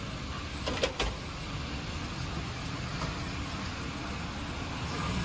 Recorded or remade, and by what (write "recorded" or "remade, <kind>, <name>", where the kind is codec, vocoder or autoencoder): recorded